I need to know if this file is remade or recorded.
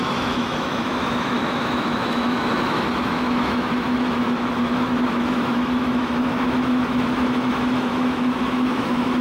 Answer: remade